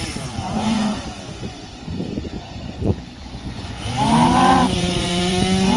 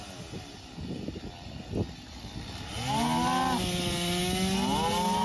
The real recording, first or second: second